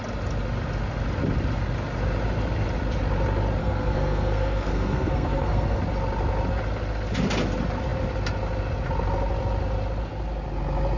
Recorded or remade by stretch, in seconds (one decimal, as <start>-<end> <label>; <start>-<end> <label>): 0.0-3.6 recorded; 3.6-5.8 remade; 5.8-11.0 recorded